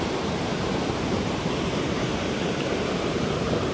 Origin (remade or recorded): remade